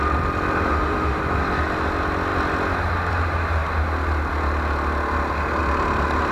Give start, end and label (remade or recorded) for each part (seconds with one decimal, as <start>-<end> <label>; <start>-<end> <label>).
0.0-0.7 recorded; 0.7-1.2 remade; 1.2-6.3 recorded